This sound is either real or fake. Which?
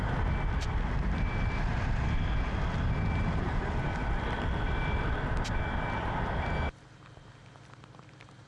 real